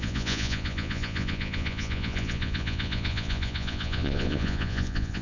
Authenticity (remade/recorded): remade